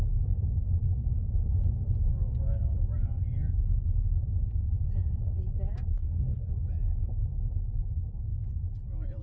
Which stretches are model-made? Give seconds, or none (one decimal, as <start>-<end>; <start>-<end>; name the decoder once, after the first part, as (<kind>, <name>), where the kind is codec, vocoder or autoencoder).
5.9-6.5 (codec, SNAC)